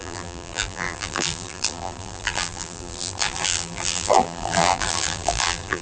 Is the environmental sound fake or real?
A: fake